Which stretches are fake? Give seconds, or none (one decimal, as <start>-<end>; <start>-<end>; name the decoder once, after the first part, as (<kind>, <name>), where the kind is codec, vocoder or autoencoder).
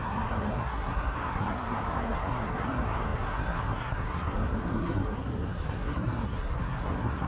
0.0-7.3 (codec, SNAC)